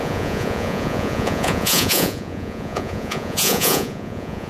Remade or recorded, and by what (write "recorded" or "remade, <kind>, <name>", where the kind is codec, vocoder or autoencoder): remade, vocoder, Vocos